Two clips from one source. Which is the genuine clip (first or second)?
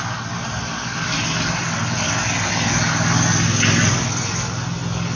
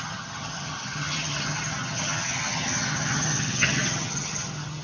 first